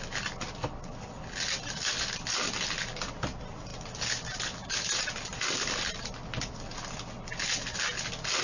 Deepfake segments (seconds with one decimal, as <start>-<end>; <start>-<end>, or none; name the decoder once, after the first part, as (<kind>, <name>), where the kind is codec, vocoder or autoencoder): none